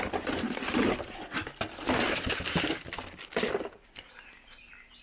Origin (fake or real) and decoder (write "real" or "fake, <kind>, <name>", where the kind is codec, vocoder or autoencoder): real